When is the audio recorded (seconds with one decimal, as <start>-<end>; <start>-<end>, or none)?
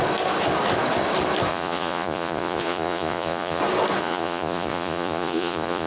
0.0-1.5; 3.6-4.0